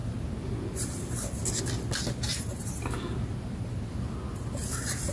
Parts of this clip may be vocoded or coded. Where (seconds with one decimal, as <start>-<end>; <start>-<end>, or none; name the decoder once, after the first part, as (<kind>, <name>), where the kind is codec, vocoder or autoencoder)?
none